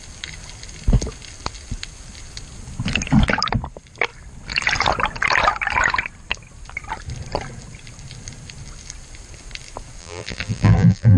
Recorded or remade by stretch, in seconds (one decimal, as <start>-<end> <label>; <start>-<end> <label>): 0.0-10.0 recorded; 10.0-11.2 remade

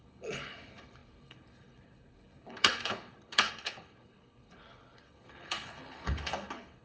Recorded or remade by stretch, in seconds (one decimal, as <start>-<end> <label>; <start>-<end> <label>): 0.0-6.8 remade

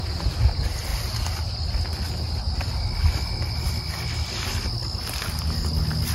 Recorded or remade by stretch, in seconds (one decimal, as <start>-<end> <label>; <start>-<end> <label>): 0.0-6.1 recorded

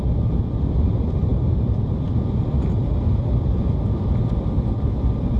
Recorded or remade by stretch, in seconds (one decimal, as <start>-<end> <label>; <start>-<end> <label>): 0.0-1.3 recorded; 1.3-4.5 remade; 4.5-5.4 recorded

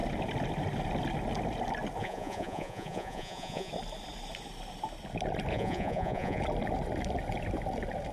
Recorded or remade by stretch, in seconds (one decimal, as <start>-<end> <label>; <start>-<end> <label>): 0.0-2.0 recorded; 2.0-3.7 remade; 3.7-5.5 recorded; 5.5-6.4 remade; 6.4-8.1 recorded

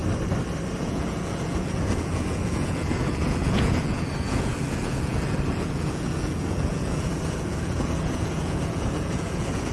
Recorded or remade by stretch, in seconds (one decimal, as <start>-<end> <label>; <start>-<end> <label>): 0.0-0.8 recorded; 0.8-9.7 remade

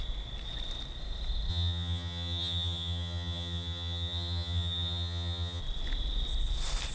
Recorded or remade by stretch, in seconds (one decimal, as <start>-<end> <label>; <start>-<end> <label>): 0.0-1.5 recorded; 1.5-5.6 remade; 5.6-6.9 recorded